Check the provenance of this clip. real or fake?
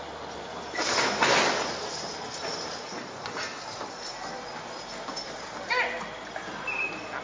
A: real